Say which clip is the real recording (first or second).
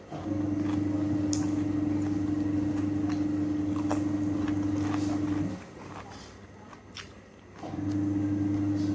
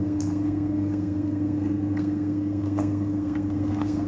first